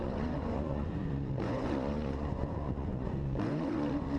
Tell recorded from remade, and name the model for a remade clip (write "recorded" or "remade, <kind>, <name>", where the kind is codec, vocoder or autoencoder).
remade, vocoder, Vocos